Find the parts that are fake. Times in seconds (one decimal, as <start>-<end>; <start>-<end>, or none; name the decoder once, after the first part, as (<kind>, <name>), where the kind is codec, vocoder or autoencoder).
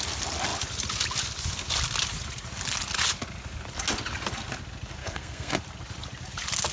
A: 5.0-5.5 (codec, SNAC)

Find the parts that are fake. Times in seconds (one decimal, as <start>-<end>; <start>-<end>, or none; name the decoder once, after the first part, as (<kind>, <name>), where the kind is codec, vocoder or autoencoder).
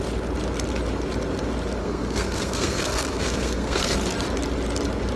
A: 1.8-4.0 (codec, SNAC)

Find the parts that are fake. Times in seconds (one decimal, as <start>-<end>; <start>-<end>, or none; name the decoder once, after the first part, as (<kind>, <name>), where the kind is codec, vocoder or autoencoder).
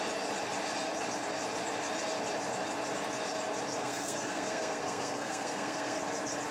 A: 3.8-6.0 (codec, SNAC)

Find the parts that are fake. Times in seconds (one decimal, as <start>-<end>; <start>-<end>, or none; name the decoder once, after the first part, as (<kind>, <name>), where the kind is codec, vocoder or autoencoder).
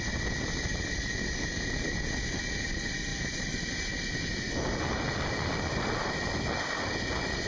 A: none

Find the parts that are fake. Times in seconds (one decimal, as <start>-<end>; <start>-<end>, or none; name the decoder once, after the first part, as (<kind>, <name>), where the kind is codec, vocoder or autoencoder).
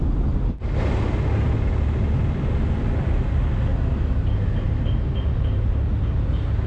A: none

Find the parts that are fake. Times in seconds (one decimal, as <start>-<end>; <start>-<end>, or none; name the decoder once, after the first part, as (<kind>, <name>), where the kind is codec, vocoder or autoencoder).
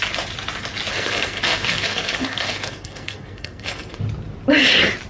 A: 0.9-4.0 (codec, SNAC)